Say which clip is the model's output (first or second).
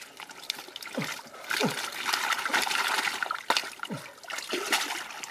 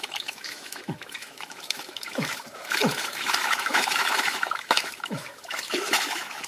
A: second